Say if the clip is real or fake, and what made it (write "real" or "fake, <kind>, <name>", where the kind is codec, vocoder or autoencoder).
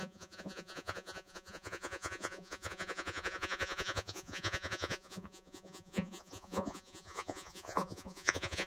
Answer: fake, vocoder, Vocos